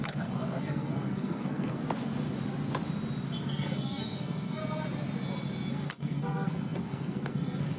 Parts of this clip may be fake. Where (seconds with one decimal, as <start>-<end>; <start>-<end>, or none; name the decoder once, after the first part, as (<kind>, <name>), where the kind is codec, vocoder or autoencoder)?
0.0-1.8 (codec, SNAC); 3.4-4.6; 5.7-7.8